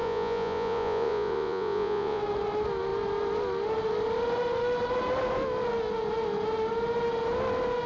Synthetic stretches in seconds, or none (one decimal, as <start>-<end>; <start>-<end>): 0.0-2.2